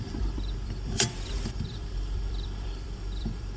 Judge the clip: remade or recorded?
remade